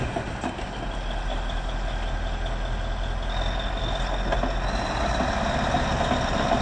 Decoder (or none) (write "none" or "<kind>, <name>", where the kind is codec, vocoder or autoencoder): none